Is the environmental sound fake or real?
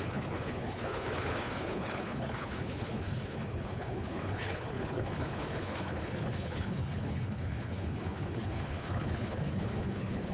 fake